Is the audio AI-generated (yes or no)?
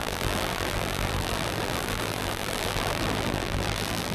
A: yes